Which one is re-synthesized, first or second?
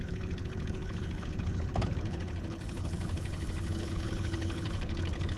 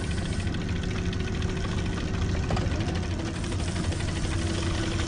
first